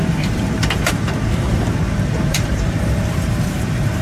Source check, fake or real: fake